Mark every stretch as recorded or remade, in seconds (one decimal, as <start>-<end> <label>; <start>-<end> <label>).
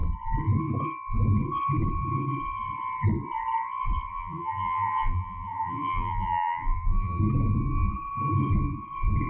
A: 0.0-4.1 recorded; 4.1-7.2 remade; 7.2-9.3 recorded